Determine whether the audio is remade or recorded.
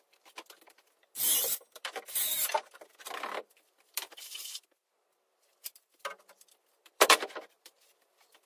remade